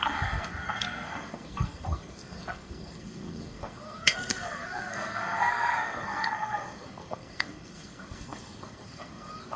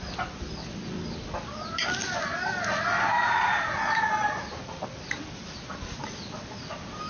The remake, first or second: first